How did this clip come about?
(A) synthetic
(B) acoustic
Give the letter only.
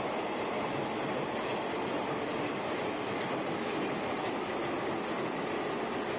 B